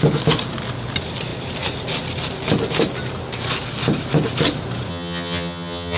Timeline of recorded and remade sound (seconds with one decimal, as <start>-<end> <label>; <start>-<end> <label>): 0.0-4.9 recorded; 4.9-6.0 remade